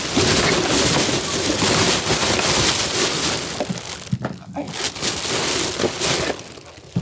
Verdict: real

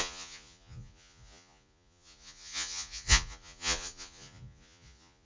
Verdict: fake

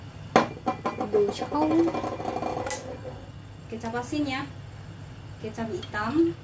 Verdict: real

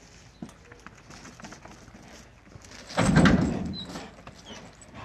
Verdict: real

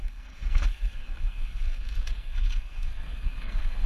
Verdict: fake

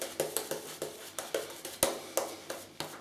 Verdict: real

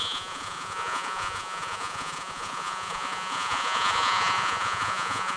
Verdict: fake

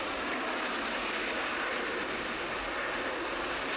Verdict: real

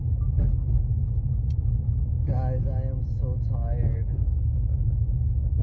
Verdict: real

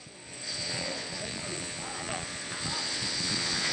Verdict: fake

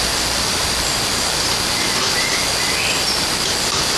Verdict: real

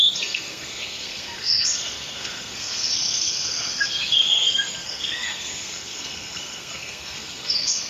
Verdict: fake